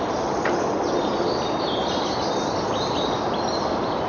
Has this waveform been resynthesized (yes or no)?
no